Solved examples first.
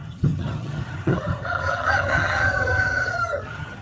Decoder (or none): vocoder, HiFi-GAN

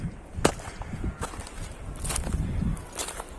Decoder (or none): none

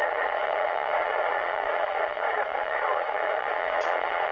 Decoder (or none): vocoder, Vocos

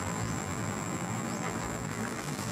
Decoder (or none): vocoder, BigVGAN v2